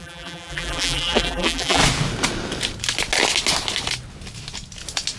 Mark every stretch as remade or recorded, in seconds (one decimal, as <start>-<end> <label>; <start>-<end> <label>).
0.0-1.8 remade; 1.8-5.2 recorded